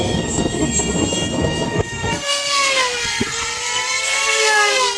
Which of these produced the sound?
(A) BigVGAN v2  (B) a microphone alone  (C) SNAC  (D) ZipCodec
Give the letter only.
C